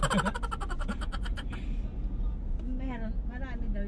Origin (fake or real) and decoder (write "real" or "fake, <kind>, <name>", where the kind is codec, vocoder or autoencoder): real